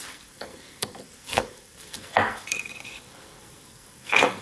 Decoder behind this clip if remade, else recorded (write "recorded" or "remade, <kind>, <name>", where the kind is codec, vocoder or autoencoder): remade, codec, SNAC